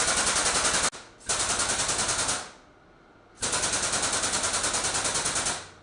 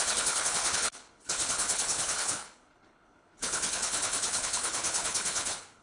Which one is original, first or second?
first